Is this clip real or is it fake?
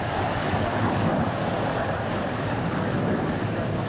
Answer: fake